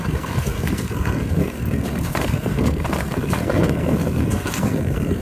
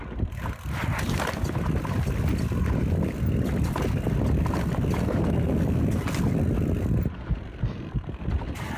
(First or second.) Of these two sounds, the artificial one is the first